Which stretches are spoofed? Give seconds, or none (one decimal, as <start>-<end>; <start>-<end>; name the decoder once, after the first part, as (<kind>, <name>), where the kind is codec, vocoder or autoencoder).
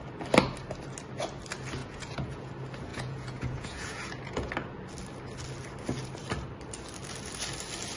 1.8-2.5 (vocoder, Vocos); 2.9-4.5